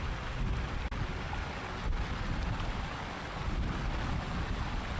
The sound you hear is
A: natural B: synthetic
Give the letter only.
A